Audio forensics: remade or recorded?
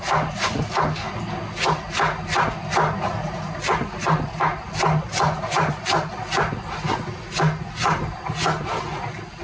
recorded